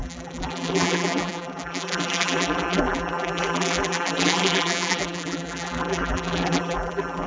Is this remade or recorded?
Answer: remade